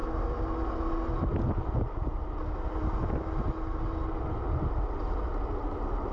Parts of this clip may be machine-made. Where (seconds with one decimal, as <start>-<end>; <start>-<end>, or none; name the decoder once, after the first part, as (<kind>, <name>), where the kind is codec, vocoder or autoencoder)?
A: none